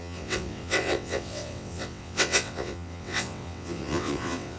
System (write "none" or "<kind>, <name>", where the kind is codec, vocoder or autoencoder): vocoder, WaveNeXt